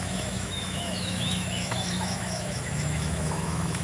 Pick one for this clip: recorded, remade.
remade